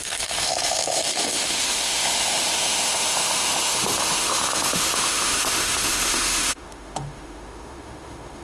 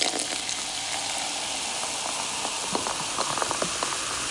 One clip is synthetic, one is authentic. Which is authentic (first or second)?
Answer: second